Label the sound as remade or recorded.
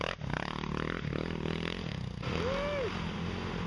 recorded